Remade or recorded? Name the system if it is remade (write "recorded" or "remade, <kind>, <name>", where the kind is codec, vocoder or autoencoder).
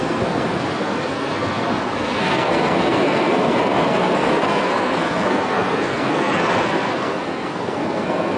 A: remade, codec, SNAC